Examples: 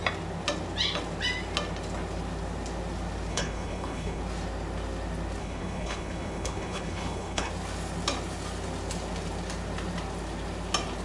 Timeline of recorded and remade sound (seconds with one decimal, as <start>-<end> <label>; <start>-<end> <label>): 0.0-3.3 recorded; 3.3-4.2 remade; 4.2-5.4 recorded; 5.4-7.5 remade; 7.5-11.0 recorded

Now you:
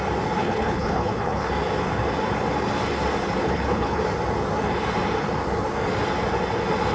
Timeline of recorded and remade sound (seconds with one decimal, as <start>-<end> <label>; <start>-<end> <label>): 0.0-0.4 recorded; 0.4-1.5 remade; 1.5-3.4 recorded; 3.4-4.0 remade; 4.0-6.9 recorded

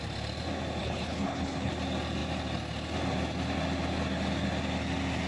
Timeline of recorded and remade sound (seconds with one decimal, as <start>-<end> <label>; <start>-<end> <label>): 0.0-0.8 recorded; 0.8-1.7 remade; 1.7-5.3 recorded